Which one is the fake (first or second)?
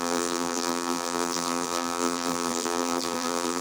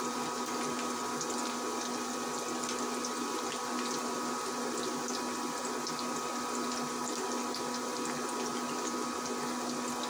first